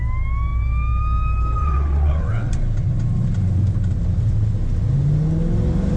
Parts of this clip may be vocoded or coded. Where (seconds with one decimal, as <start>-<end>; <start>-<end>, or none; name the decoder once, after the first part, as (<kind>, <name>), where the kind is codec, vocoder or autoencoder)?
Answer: 1.6-2.6 (vocoder, WaveNeXt)

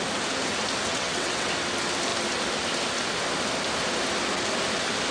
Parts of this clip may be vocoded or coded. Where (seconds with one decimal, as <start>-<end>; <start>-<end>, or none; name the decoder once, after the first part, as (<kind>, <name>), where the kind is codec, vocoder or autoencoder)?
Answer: 0.9-1.5 (vocoder, WaveNeXt)

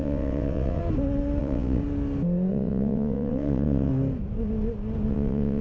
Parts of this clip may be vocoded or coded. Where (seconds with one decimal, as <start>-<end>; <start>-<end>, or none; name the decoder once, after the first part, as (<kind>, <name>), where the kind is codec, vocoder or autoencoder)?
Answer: 0.0-0.8 (vocoder, WaveNeXt); 1.4-1.8; 2.5-3.9; 5.1-5.6